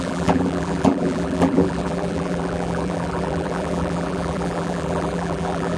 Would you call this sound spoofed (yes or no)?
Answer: yes